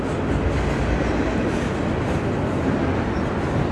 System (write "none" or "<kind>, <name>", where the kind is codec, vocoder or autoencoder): none